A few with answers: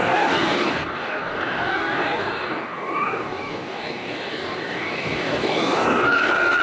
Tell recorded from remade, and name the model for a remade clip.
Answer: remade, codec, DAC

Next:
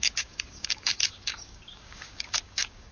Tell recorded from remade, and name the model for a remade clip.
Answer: remade, codec, DAC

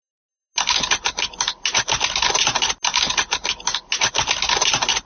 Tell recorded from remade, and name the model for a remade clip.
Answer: recorded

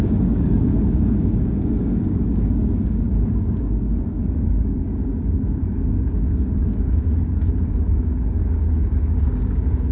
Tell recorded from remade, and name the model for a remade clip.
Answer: remade, codec, DAC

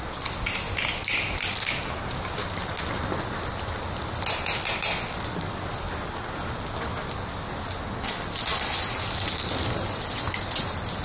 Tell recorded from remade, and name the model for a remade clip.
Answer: recorded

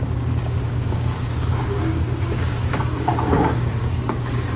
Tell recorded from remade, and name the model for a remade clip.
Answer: remade, codec, DAC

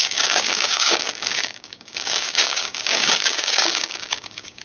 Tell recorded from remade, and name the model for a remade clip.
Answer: remade, codec, DAC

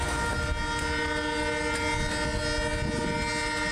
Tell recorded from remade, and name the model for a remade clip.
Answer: recorded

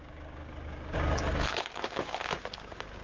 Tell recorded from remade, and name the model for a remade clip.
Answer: remade, codec, DAC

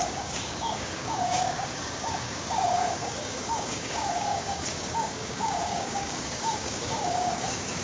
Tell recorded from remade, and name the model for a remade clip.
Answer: remade, codec, DAC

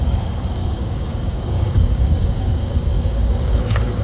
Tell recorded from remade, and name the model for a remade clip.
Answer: remade, codec, DAC